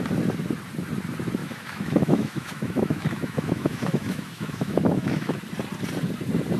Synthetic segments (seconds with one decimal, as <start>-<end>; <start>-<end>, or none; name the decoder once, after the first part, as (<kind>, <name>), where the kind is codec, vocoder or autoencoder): 1.4-5.4 (autoencoder, DAC-VAE)